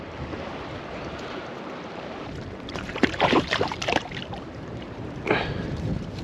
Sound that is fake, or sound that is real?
fake